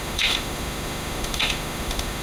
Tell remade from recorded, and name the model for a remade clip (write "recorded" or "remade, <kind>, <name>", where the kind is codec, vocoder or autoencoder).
remade, autoencoder, DAC-VAE